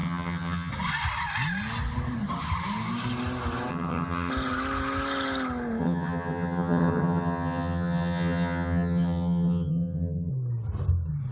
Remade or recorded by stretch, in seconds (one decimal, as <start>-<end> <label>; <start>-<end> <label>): 0.0-0.7 remade; 0.7-3.7 recorded; 3.7-4.3 remade; 4.3-5.8 recorded; 5.8-10.3 remade; 10.3-11.3 recorded